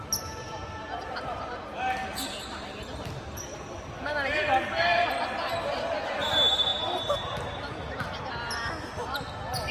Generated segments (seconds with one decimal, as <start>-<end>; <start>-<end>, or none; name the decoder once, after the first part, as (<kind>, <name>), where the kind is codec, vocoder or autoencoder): none